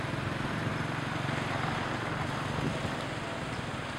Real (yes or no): yes